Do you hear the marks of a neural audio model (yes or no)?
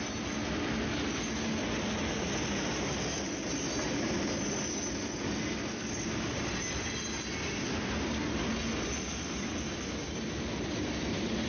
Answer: no